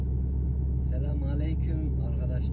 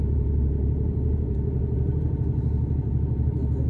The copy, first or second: second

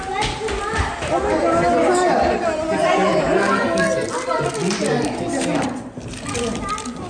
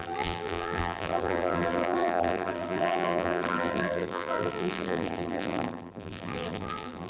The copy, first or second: second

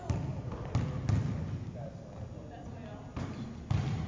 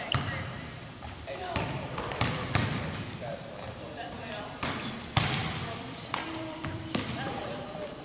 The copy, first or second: second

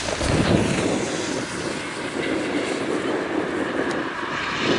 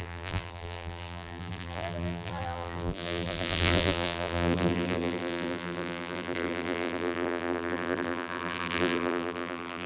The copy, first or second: second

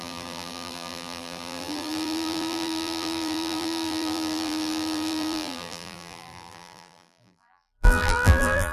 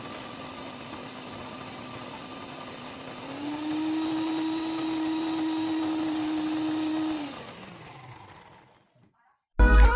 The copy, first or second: first